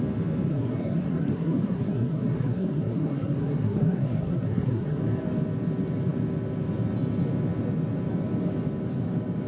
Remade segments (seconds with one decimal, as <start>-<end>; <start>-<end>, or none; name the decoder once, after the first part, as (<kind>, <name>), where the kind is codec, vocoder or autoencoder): 0.5-5.0 (codec, SNAC)

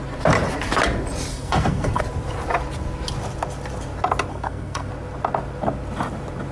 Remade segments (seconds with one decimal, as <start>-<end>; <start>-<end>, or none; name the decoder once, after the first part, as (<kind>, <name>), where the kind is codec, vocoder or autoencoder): 1.3-2.0 (codec, SNAC); 4.3-4.9

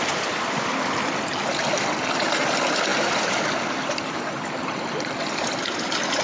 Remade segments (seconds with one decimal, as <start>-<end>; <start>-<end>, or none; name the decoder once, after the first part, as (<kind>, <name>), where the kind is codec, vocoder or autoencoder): none

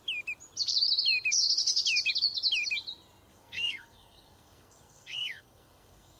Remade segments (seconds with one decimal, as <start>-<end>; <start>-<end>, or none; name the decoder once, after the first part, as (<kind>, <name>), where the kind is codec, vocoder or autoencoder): 3.3-6.2 (codec, SNAC)

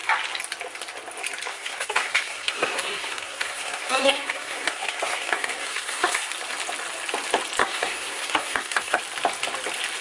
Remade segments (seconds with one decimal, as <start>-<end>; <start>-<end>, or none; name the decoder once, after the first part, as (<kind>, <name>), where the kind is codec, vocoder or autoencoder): 1.5-6.3 (codec, SNAC); 7.6-9.0